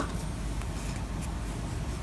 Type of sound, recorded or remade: recorded